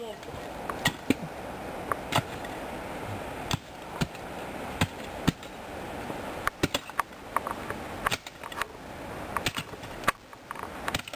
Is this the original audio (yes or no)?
yes